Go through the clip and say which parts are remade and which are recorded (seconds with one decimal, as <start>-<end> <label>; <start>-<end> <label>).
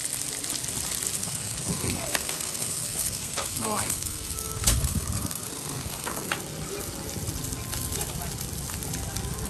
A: 0.0-1.2 recorded; 1.2-6.3 remade; 6.3-9.5 recorded